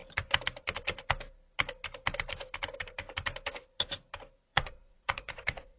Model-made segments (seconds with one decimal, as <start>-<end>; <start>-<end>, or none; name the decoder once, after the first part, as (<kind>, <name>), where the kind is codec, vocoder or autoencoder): 4.5-5.8 (vocoder, Vocos)